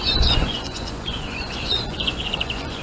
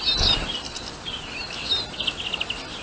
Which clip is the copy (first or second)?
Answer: first